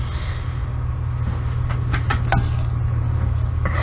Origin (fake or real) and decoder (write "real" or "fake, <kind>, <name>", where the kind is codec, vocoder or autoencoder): real